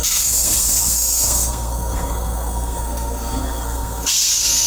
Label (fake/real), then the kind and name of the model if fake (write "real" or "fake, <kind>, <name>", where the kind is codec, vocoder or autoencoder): fake, codec, SNAC